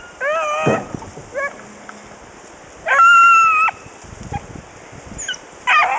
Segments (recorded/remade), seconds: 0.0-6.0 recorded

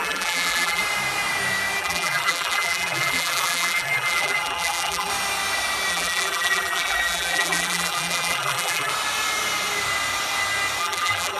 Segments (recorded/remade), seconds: 0.0-0.8 remade; 0.8-1.8 recorded; 1.8-5.1 remade; 5.1-5.9 recorded; 5.9-8.9 remade; 8.9-10.8 recorded; 10.8-11.4 remade

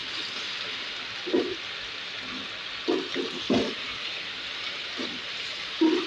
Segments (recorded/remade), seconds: 0.0-3.7 recorded; 3.7-6.1 remade

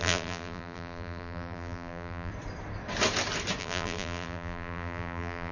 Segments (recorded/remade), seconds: 0.0-2.3 remade; 2.3-3.6 recorded; 3.6-5.5 remade

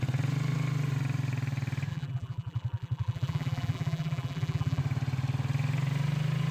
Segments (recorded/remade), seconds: 0.0-1.9 recorded; 1.9-4.8 remade; 4.8-6.5 recorded

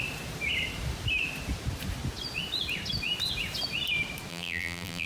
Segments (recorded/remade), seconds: 0.0-4.3 recorded; 4.3-5.1 remade

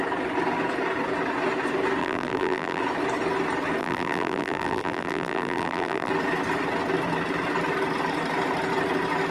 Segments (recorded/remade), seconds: 0.0-2.0 recorded; 2.0-2.8 remade; 2.8-3.8 recorded; 3.8-6.1 remade; 6.1-9.3 recorded